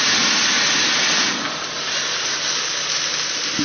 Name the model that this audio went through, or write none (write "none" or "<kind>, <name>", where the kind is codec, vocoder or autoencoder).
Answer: none